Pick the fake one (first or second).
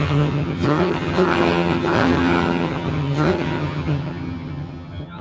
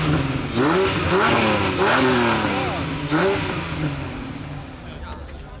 first